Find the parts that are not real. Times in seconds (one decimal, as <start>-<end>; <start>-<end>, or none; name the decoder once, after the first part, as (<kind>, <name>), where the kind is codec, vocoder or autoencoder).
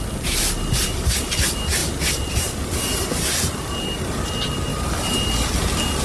1.8-3.7 (vocoder, BigVGAN v2); 4.7-5.2